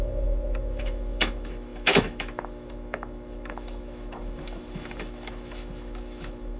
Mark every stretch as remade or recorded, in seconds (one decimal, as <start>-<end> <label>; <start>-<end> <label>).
0.0-6.6 remade